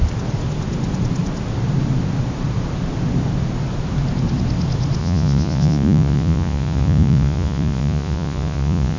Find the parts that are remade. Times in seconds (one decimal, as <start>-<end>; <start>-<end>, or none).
5.0-9.0